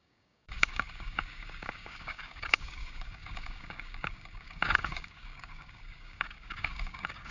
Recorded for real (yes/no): no